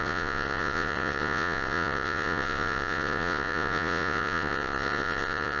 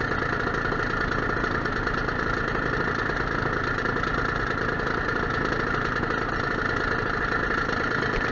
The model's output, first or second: first